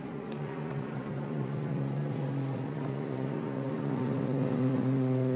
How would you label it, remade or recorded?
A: remade